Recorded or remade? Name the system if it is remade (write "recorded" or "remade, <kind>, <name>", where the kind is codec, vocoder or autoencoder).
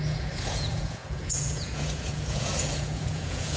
remade, vocoder, Vocos